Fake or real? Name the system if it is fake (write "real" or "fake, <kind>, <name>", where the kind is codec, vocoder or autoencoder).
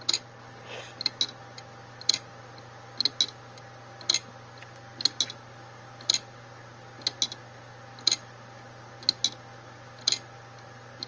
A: real